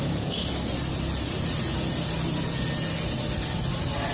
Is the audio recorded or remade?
recorded